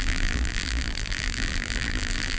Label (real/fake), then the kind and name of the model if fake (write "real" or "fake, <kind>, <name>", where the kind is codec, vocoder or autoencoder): fake, vocoder, BigVGAN v2